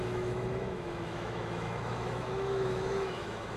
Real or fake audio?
fake